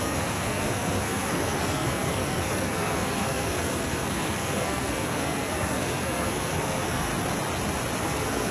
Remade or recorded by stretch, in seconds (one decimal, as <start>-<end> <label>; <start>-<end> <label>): 0.0-7.1 remade; 7.1-8.0 recorded; 8.0-8.5 remade